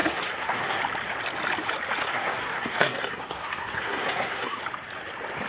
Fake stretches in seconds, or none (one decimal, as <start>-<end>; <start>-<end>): 0.0-0.8; 2.0-4.6